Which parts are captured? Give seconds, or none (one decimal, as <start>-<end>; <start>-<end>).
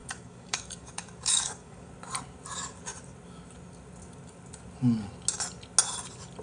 1.9-6.4